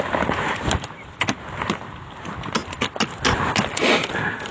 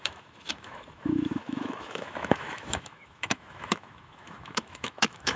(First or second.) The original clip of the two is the first